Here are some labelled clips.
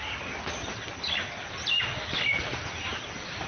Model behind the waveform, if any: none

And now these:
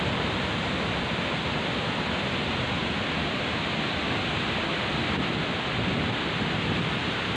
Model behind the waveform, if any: none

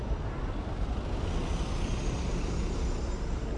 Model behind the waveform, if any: none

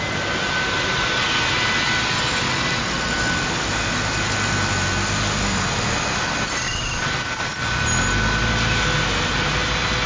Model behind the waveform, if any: none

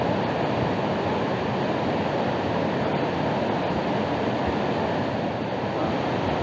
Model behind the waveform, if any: none